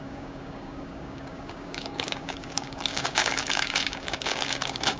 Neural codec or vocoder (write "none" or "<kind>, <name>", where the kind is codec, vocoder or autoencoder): codec, DAC